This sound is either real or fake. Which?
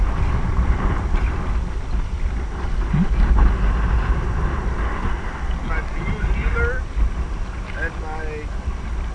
real